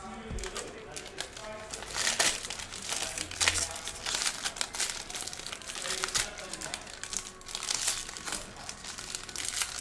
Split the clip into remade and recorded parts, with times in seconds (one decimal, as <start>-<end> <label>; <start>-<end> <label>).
0.0-9.8 recorded